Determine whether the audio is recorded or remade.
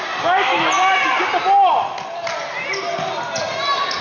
recorded